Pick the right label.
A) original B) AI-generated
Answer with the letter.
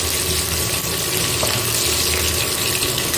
A